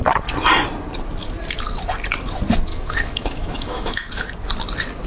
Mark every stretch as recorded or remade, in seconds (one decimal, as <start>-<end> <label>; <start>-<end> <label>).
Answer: 0.0-2.7 recorded; 2.7-4.1 remade; 4.1-5.1 recorded